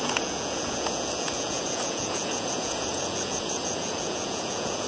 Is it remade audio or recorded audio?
remade